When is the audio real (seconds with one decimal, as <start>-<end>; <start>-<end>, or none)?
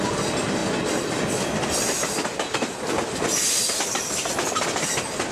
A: 0.0-5.3